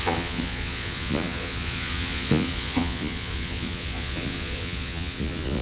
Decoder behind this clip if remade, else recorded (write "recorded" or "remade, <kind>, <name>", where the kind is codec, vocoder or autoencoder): remade, vocoder, Vocos